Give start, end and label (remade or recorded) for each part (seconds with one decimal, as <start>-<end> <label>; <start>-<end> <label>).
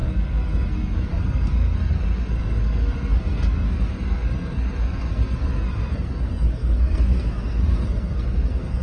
0.0-8.8 remade